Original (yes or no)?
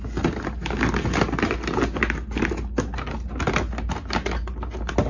yes